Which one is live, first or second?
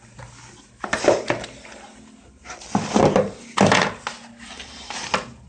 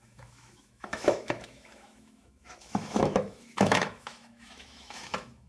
first